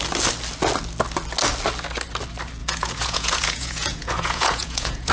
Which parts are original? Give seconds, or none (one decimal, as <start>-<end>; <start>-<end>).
0.0-2.6